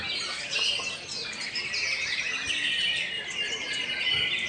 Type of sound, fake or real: real